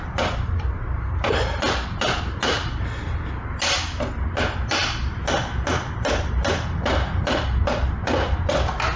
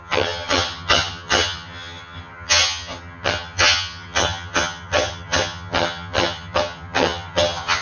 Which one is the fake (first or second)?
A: second